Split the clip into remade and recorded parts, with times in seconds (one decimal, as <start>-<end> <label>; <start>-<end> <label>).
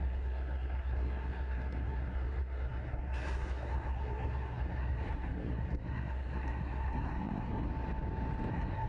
0.0-7.7 remade; 7.7-8.5 recorded; 8.5-8.9 remade